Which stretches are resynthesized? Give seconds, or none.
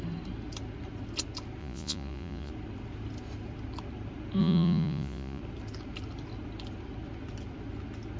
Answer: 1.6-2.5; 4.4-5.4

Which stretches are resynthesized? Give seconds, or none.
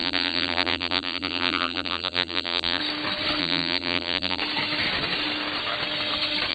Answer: 0.0-2.8; 3.4-4.4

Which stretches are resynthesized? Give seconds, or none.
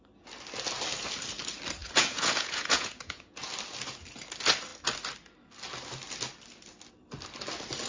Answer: 1.8-3.5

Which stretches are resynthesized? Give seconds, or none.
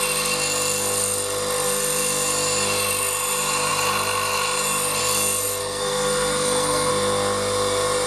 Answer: 5.6-6.9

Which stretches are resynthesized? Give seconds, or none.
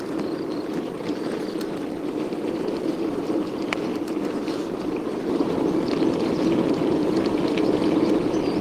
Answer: 3.9-5.9; 7.0-7.5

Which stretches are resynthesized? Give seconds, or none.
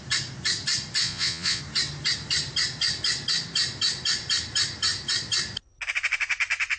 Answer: 1.0-1.6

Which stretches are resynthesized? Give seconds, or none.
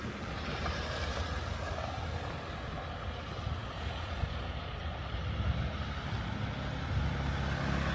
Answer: 3.6-4.6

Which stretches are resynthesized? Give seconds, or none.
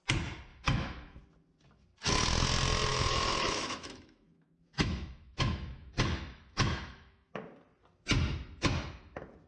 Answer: 0.5-1.2; 2.9-7.3